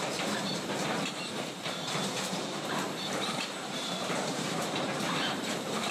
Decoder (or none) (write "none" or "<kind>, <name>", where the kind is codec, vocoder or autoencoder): vocoder, BigVGAN v2